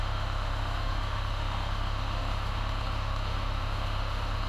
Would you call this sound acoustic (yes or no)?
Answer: no